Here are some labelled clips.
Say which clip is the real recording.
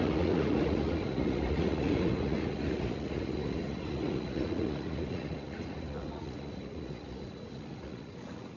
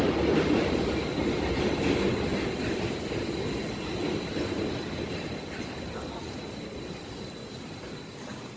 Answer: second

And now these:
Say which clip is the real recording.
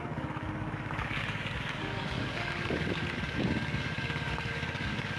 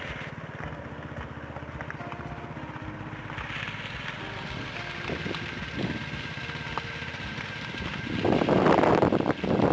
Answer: second